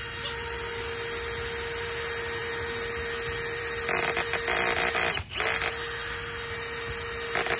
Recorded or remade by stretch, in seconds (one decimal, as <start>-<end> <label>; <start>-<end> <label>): 0.0-7.6 recorded